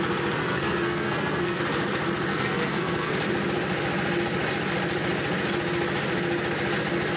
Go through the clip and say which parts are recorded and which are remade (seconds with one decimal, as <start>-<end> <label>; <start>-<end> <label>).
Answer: 0.0-0.4 recorded; 0.4-1.6 remade; 1.6-2.3 recorded; 2.3-3.1 remade; 3.1-7.2 recorded